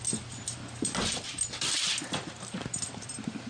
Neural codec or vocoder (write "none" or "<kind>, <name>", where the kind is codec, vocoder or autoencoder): vocoder, BigVGAN v2